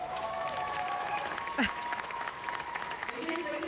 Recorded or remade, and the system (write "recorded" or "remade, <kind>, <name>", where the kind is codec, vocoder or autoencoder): remade, autoencoder, DAC-VAE